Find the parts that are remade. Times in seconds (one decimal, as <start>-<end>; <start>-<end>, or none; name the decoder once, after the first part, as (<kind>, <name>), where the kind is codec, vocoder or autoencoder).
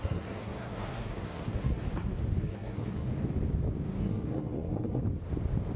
0.0-1.8 (codec, SNAC); 2.4-3.1; 4.0-5.0